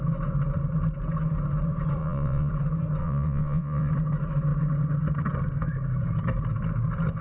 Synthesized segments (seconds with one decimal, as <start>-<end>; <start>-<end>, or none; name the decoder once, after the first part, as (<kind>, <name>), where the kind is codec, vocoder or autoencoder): 2.0-2.5 (vocoder, WaveNeXt); 3.0-3.9